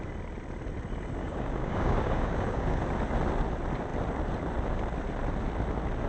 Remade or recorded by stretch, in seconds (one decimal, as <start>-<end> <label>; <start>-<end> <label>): 0.0-1.2 recorded; 1.2-2.8 remade; 2.8-6.1 recorded